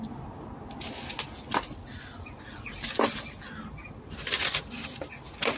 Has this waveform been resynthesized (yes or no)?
no